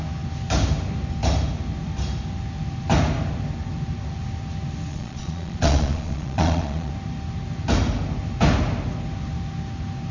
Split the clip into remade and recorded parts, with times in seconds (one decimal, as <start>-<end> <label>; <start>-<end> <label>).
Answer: 0.0-4.9 recorded; 4.9-6.9 remade; 6.9-10.1 recorded